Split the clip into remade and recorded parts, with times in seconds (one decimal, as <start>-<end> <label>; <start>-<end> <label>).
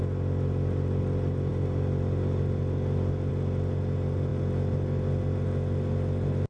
0.0-6.5 recorded